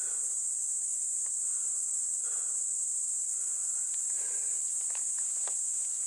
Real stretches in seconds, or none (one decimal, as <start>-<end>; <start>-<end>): 0.0-0.9; 4.6-6.1